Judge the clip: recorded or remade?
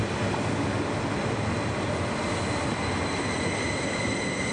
recorded